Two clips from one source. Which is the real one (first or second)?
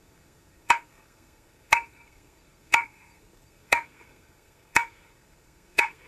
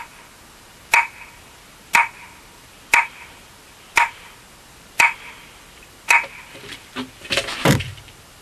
second